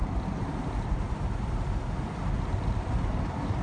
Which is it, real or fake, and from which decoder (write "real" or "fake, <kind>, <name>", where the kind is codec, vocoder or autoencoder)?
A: real